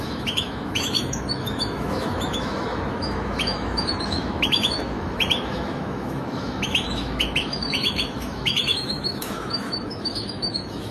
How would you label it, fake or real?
fake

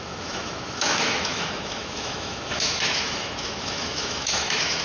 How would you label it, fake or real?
fake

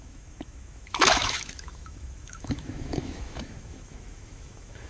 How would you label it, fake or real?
fake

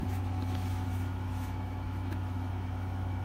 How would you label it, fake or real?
fake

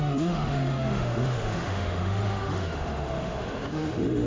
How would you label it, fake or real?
fake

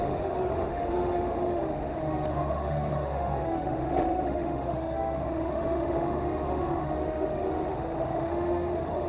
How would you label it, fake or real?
fake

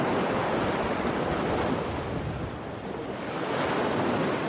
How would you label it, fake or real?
real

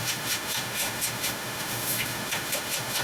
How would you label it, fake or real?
fake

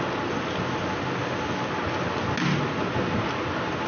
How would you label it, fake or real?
real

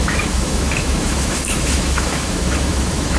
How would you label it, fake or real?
fake